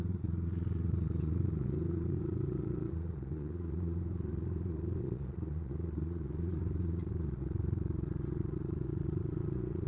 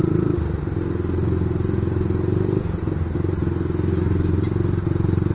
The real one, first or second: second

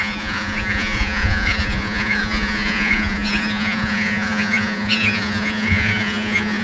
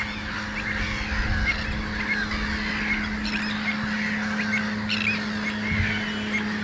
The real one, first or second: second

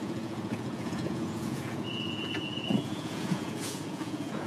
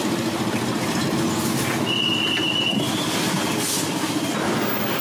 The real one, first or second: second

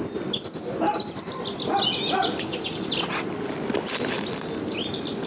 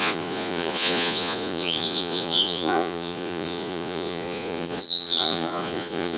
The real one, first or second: first